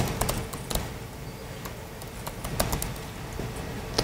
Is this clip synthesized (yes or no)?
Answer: no